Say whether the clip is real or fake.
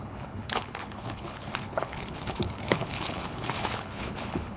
fake